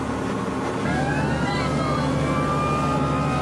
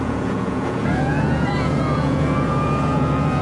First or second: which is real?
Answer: first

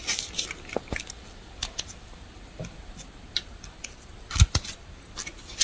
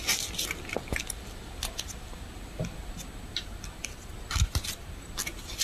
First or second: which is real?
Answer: second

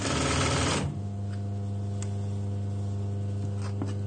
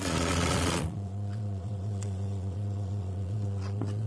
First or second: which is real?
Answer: first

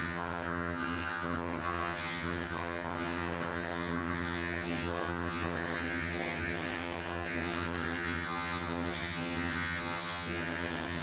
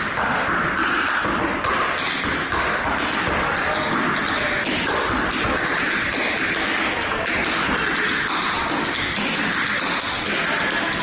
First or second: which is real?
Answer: second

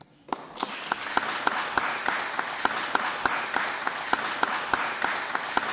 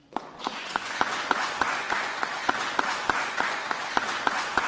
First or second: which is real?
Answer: first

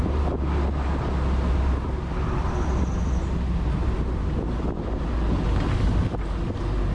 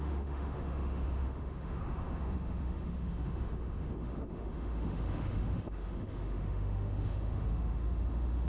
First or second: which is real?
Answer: first